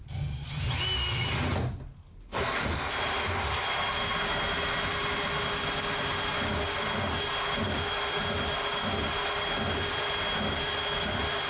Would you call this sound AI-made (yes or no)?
no